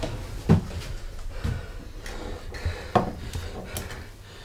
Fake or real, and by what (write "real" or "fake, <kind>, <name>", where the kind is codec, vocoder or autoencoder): real